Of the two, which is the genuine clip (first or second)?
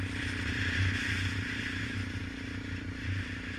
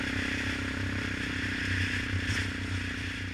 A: second